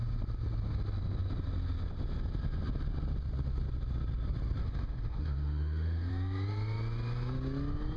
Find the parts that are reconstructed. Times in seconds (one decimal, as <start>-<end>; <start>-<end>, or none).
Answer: 4.6-6.1